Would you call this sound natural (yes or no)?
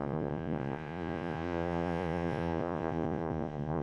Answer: no